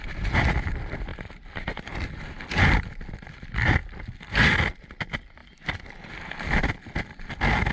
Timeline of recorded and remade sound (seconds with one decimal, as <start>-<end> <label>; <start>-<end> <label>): 0.0-7.7 recorded